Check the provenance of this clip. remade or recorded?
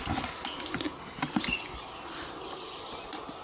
recorded